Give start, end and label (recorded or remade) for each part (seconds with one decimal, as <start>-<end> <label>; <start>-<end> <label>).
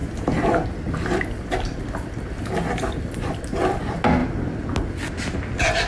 0.0-3.4 remade; 3.4-4.2 recorded; 4.2-4.7 remade; 4.7-5.9 recorded